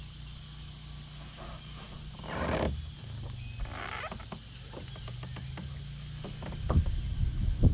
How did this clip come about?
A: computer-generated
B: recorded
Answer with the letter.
B